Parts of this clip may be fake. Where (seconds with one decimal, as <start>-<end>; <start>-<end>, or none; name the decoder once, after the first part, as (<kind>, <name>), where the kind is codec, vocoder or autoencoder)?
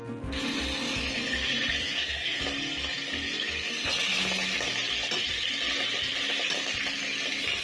1.8-2.4 (codec, SNAC)